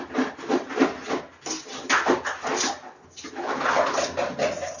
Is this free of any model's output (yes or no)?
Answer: yes